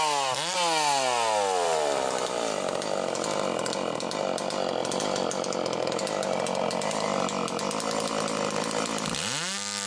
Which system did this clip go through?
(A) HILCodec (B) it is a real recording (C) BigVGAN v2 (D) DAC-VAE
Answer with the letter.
B